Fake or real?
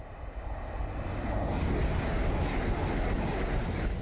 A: real